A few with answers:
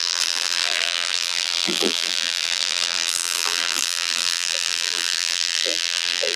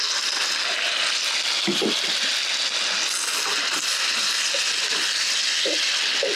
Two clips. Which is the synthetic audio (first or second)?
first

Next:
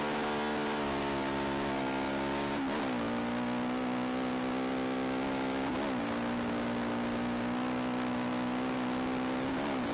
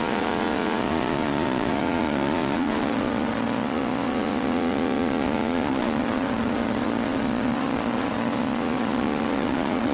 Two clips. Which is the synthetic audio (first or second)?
second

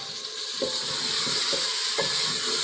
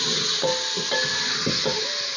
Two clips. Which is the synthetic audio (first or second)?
first